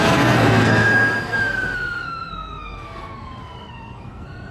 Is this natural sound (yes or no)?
no